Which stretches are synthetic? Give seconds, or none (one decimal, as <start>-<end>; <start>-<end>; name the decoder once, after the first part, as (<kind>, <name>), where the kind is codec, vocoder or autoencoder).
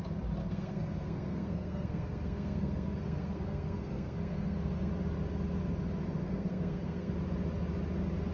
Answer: 0.4-4.9 (codec, SNAC); 6.2-7.1